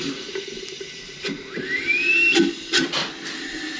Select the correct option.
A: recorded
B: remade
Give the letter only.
A